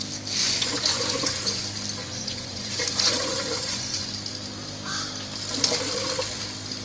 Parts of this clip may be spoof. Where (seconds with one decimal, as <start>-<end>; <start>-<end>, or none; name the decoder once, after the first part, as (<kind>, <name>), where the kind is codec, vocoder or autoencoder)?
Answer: 0.4-1.6 (vocoder, Vocos); 2.0-4.1